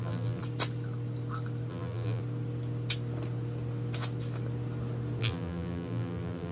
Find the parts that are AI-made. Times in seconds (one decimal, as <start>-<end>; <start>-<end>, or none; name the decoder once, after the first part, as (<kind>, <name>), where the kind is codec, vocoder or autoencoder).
0.0-0.4 (vocoder, BigVGAN v2); 1.7-2.2; 5.2-6.5